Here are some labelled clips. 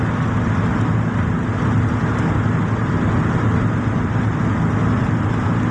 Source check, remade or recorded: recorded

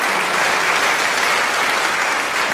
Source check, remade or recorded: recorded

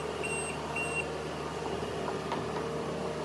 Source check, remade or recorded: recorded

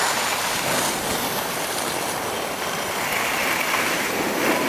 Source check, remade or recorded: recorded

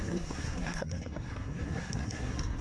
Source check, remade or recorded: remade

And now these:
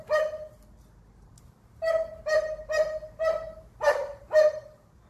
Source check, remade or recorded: recorded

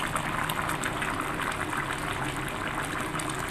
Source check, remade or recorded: recorded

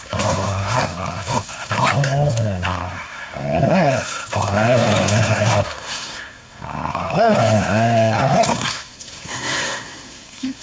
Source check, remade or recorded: remade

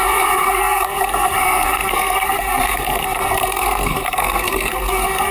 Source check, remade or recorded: remade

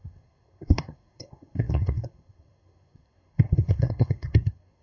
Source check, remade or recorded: remade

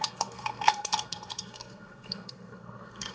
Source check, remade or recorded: remade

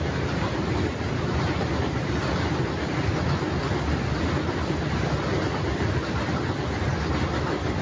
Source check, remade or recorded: recorded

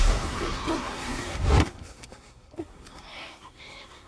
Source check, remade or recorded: remade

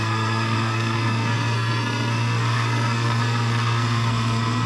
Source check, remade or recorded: remade